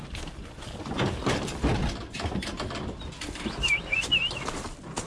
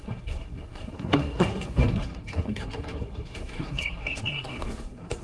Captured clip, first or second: first